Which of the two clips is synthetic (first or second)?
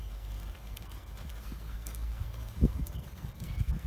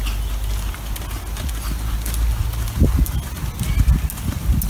first